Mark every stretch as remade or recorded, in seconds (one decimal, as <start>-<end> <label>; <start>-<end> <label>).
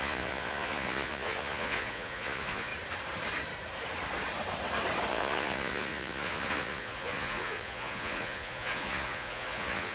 0.0-2.7 remade; 2.7-5.1 recorded; 5.1-9.9 remade